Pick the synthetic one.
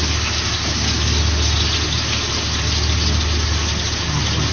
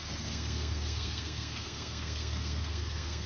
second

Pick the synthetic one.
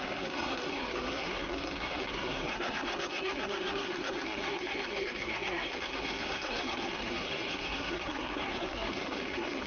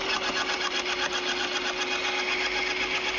first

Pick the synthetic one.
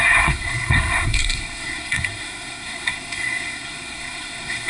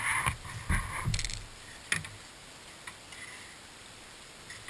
first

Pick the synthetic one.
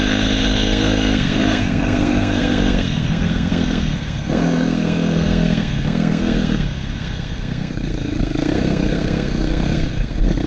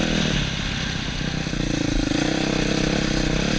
first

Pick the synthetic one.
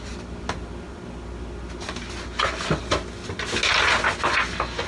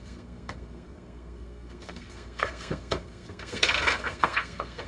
second